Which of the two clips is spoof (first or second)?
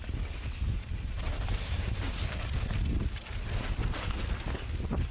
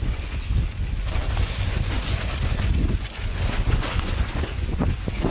second